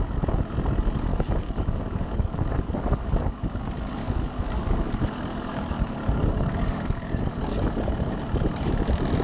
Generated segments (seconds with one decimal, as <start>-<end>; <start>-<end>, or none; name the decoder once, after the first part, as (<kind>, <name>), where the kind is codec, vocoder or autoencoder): 1.1-3.6 (codec, DAC); 4.0-8.2